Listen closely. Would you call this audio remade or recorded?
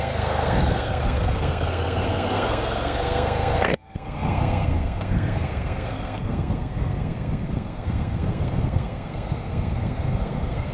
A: remade